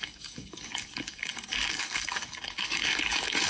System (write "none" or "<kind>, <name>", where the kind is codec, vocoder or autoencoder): codec, DAC